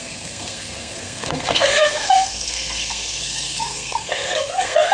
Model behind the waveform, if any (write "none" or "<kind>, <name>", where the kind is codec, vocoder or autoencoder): codec, SNAC